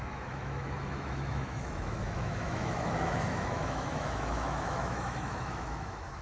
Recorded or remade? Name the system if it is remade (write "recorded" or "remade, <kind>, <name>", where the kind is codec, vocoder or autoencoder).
remade, autoencoder, DAC-VAE